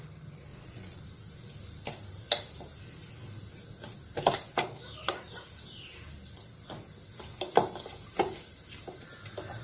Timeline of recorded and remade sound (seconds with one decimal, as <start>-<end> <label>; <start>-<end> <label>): 0.0-0.5 recorded; 0.5-1.0 remade; 1.0-9.6 recorded